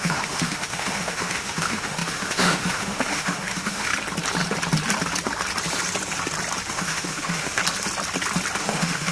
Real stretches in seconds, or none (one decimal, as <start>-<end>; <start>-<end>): 3.9-6.7; 7.6-8.6